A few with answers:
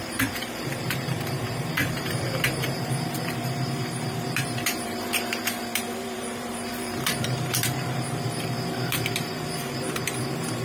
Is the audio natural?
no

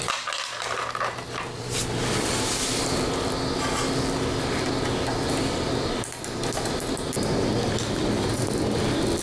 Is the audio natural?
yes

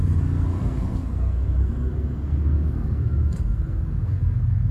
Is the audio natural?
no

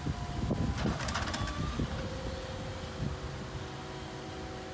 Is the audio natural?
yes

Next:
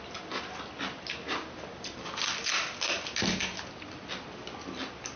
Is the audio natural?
yes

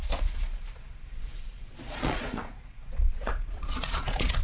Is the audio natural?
no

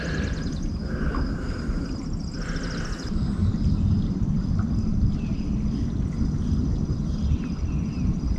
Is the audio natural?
yes